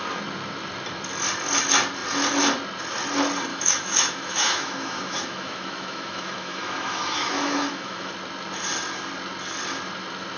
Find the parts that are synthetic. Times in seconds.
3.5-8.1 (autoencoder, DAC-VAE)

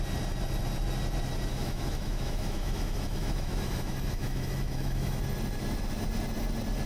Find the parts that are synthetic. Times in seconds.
1.5-5.2 (autoencoder, DAC-VAE)

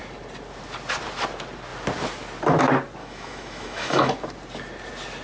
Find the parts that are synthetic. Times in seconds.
3.0-4.1 (autoencoder, DAC-VAE)

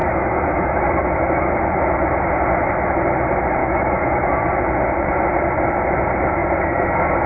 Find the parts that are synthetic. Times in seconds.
0.0-0.9 (autoencoder, DAC-VAE); 3.6-4.4

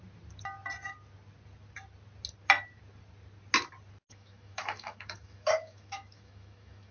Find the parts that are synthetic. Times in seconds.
4.1-6.9 (autoencoder, DAC-VAE)

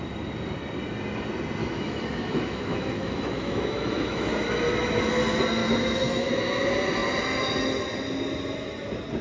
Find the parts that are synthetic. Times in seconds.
1.6-4.3 (autoencoder, DAC-VAE); 5.6-6.4

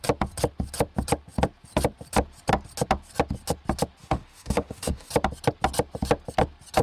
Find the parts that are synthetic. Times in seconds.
4.0-5.1 (autoencoder, DAC-VAE)